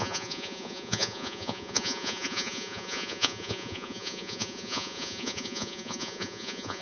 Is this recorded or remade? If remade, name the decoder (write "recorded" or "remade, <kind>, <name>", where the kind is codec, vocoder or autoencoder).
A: remade, vocoder, Vocos